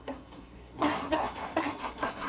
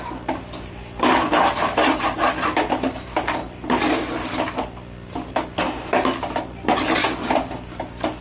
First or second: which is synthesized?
first